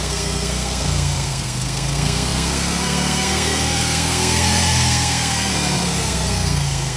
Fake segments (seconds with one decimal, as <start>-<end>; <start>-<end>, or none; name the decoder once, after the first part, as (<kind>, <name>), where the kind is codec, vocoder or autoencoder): 0.0-7.0 (codec, SNAC)

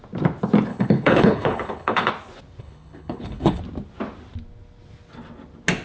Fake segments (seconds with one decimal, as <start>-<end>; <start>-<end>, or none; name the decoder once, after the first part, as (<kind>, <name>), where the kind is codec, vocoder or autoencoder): 0.7-2.1 (codec, HILCodec); 2.6-3.6

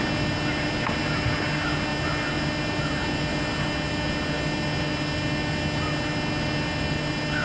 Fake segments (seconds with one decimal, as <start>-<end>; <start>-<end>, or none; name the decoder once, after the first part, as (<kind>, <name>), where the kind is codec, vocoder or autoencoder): none

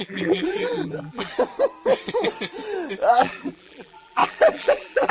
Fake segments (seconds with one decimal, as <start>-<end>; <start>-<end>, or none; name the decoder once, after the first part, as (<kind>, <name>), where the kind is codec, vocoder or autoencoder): 0.0-1.3 (vocoder, BigVGAN v2); 3.1-5.1

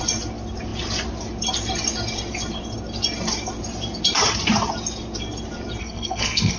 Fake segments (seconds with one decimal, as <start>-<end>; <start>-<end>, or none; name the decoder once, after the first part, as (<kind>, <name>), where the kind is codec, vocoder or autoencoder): 5.8-6.6 (codec, SNAC)

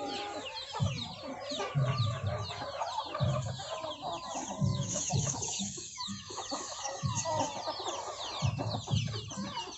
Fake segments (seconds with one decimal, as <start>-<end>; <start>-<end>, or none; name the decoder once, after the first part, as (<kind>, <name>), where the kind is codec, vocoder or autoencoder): 4.7-7.1 (autoencoder, DAC-VAE)

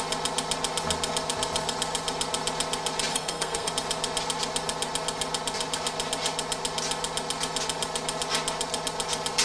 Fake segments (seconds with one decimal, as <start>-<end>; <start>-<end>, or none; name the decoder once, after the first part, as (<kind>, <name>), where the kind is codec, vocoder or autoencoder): 3.1-3.7 (codec, SNAC)

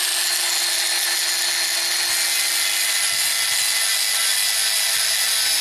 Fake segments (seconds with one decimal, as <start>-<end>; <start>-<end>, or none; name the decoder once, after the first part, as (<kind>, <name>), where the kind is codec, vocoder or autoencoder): none